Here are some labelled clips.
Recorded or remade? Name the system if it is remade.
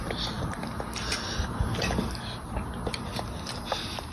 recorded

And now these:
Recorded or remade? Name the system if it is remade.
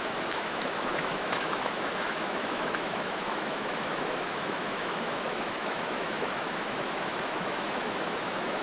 remade, autoencoder, DAC-VAE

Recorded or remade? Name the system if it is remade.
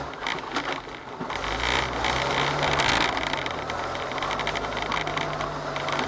recorded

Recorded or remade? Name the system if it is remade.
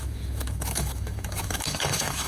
remade, autoencoder, DAC-VAE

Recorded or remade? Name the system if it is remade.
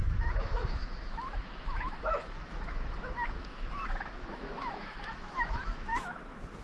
remade, autoencoder, DAC-VAE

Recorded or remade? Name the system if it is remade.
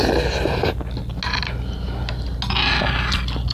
recorded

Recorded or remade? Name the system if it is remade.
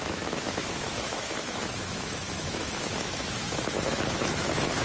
remade, autoencoder, DAC-VAE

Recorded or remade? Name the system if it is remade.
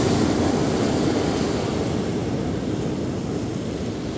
recorded